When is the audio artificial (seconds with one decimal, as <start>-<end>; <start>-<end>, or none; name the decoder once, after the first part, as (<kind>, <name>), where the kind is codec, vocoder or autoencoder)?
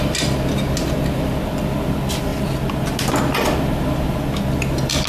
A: none